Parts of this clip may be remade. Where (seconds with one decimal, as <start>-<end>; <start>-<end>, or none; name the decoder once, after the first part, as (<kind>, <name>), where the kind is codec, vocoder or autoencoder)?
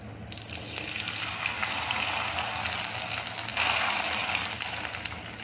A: 1.6-2.3 (vocoder, BigVGAN v2); 3.5-5.4